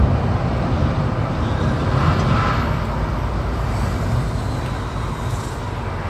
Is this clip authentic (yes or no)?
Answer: yes